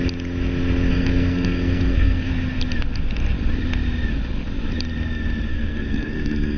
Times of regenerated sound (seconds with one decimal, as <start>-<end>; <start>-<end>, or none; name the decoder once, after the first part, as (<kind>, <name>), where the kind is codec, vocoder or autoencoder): 0.9-2.3 (codec, SNAC); 5.5-6.6

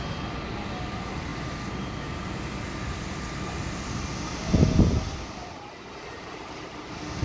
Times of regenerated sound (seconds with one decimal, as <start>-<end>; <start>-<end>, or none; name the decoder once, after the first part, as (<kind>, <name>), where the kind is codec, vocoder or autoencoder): none

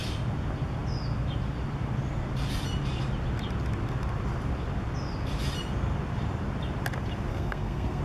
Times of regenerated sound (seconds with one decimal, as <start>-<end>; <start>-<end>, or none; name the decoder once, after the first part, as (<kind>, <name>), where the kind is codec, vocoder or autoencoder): 7.3-8.0 (codec, SNAC)

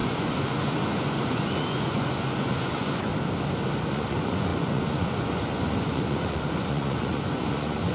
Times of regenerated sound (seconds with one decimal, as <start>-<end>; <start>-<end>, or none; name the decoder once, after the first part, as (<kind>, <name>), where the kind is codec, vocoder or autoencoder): 0.0-3.1 (vocoder, Vocos); 3.9-7.9

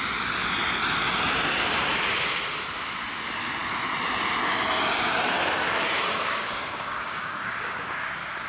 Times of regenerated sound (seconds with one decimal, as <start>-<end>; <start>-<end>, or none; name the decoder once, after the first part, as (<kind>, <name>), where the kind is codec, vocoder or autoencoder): 5.8-8.1 (codec, DAC)

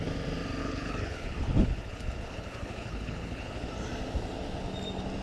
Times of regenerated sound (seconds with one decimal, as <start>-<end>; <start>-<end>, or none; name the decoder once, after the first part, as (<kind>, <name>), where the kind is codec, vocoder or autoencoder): 0.6-3.7 (codec, HILCodec)

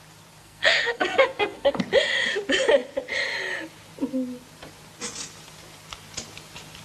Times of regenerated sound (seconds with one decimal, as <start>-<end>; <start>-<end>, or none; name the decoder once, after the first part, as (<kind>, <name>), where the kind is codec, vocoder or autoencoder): 0.4-1.8 (codec, SNAC)